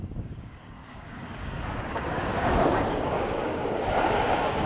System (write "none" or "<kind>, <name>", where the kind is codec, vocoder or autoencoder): codec, DAC